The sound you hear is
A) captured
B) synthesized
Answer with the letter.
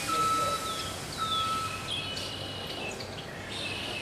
A